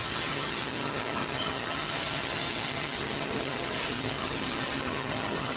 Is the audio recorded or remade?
remade